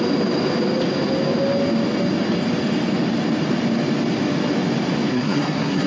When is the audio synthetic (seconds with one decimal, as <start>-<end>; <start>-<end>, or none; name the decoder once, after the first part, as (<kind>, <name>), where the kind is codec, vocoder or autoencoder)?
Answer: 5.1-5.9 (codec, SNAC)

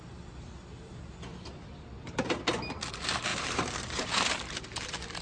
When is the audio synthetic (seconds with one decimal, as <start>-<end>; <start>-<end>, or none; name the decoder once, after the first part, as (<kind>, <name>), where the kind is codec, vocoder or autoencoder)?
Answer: 3.3-5.2 (vocoder, BigVGAN v2)

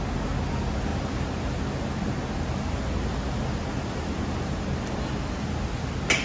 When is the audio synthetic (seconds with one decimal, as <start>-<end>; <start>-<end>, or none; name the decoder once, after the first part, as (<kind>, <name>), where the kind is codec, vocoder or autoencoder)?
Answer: none